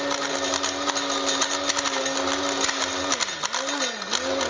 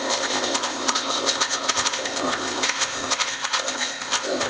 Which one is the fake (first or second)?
second